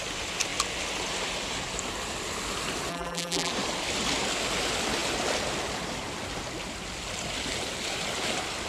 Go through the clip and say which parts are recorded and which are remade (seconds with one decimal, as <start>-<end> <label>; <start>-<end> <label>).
0.0-2.9 recorded; 2.9-3.5 remade; 3.5-8.7 recorded